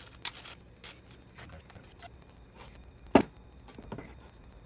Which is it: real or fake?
real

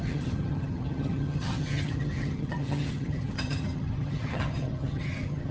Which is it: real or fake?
fake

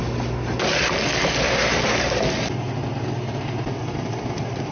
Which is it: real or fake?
real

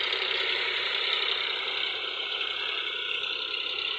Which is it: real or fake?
real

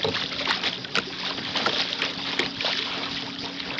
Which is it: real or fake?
real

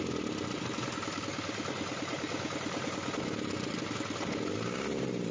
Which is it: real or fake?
real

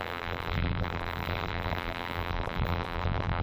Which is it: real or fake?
fake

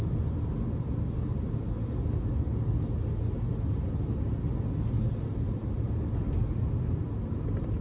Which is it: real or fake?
real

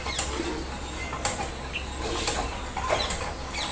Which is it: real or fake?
real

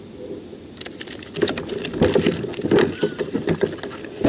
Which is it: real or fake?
real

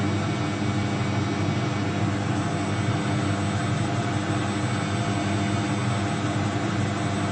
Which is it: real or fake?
real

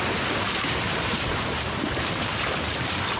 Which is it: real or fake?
fake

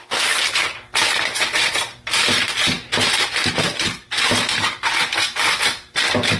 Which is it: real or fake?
real